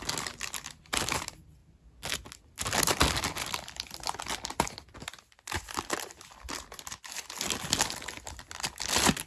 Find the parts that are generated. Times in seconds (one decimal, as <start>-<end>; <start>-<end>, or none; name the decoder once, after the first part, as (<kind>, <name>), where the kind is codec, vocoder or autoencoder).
none